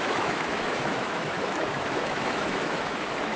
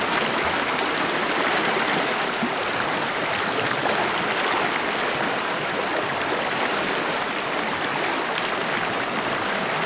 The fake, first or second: first